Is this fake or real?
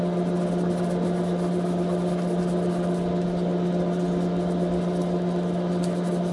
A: real